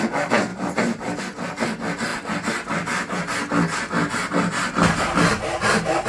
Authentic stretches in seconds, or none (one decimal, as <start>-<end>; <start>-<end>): 0.0-0.5; 1.2-6.1